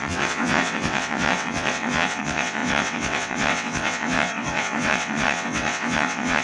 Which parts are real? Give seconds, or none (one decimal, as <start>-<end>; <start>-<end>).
none